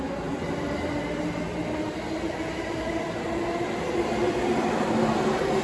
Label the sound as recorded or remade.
recorded